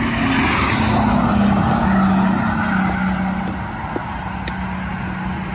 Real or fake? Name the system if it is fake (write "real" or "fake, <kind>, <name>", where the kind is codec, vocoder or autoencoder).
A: real